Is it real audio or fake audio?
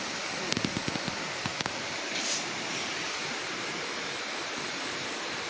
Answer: real